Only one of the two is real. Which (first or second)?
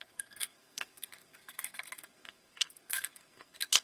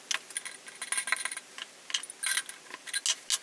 second